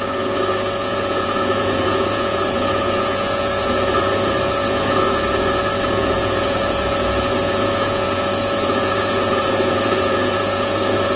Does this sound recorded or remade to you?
remade